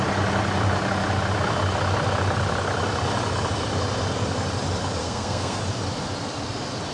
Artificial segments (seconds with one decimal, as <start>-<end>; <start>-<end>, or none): 5.0-5.6